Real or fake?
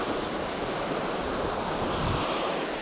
real